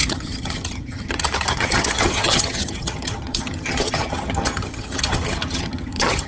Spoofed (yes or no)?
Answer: yes